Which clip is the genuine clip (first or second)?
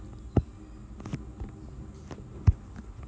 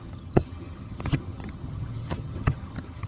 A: first